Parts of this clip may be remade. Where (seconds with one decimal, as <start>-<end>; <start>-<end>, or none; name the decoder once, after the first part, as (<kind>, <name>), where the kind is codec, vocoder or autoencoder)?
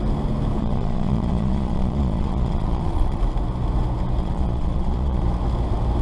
0.6-3.2 (vocoder, Vocos); 4.2-5.2